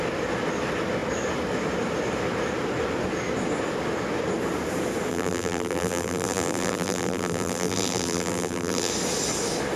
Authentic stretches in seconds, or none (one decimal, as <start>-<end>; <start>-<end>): 0.0-5.1; 8.9-9.8